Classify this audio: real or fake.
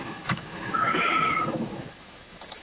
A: fake